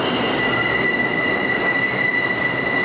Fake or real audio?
real